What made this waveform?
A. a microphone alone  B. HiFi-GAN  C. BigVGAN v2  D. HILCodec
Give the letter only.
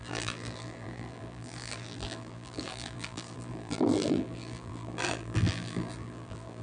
C